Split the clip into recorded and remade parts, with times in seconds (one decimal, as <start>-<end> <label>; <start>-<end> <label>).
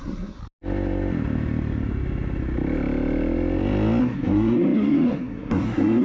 0.0-0.4 remade; 0.4-4.0 recorded; 4.0-6.0 remade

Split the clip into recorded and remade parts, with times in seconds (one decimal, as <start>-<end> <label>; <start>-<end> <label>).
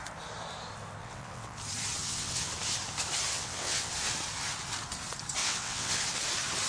0.0-1.0 recorded; 1.0-1.6 remade; 1.6-2.0 recorded; 2.0-2.5 remade; 2.5-3.3 recorded; 3.3-3.9 remade; 3.9-5.4 recorded; 5.4-6.0 remade; 6.0-6.7 recorded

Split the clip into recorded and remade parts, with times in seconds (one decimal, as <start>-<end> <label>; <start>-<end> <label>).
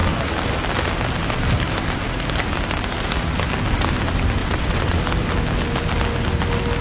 0.0-4.4 recorded; 4.4-5.0 remade; 5.0-6.8 recorded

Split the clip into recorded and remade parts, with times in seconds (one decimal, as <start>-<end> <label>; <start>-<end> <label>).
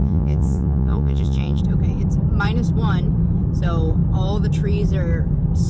0.0-1.6 remade; 1.6-5.7 recorded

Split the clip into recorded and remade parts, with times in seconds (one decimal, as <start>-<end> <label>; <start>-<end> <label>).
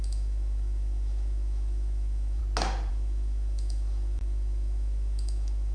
0.0-2.4 remade; 2.4-2.9 recorded; 2.9-5.7 remade